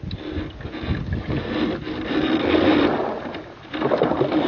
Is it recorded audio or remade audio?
recorded